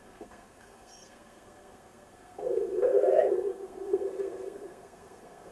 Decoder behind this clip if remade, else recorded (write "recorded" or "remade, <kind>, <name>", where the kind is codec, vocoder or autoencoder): remade, codec, SNAC